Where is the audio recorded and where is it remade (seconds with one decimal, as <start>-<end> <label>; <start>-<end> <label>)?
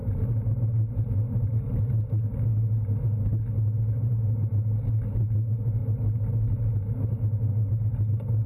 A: 0.0-2.2 remade; 2.2-8.5 recorded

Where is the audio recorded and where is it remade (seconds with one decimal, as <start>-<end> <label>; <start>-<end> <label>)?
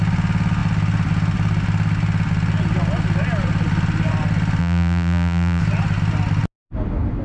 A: 0.0-4.6 recorded; 4.6-5.6 remade; 5.6-7.2 recorded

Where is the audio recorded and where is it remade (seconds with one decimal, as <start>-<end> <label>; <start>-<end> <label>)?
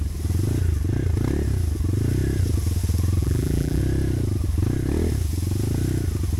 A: 0.0-3.2 recorded; 3.2-3.8 remade; 3.8-6.4 recorded